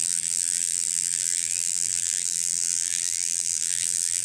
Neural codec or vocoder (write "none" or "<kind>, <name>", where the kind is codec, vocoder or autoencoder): vocoder, BigVGAN v2